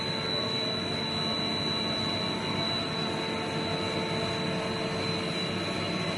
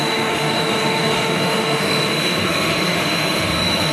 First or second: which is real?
first